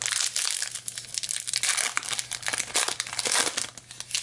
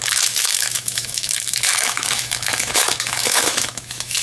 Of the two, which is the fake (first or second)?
second